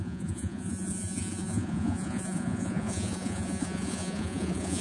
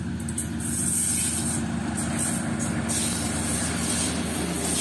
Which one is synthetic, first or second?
first